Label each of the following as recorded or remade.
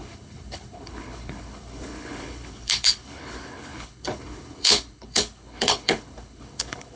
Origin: remade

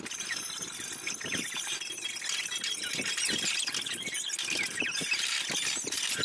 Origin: recorded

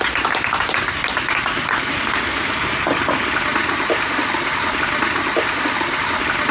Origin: recorded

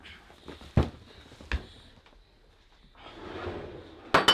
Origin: recorded